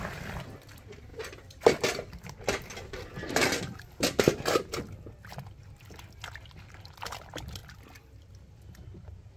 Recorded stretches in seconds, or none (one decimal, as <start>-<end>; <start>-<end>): 0.0-1.1; 4.8-9.4